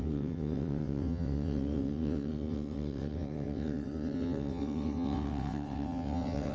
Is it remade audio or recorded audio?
remade